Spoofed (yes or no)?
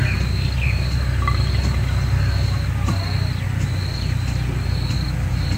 yes